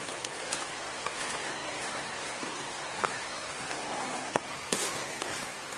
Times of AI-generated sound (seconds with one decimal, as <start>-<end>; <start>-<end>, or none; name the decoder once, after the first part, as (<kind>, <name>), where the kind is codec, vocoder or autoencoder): 0.0-5.8 (codec, SNAC)